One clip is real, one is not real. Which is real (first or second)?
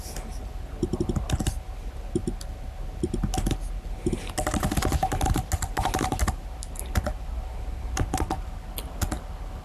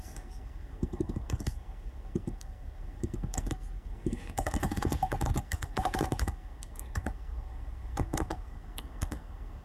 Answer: first